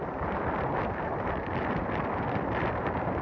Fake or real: real